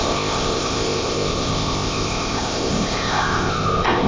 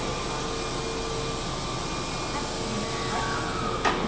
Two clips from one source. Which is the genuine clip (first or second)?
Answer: second